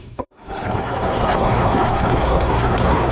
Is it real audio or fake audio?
fake